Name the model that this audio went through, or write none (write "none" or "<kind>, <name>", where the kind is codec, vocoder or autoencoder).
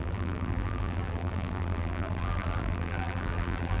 vocoder, BigVGAN v2